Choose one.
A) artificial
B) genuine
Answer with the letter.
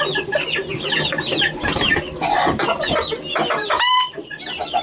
B